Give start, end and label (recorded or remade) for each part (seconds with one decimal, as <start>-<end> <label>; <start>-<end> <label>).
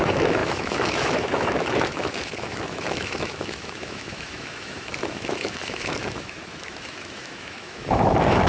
0.0-8.5 remade